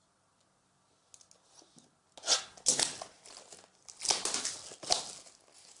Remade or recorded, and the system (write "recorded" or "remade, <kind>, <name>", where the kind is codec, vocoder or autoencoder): recorded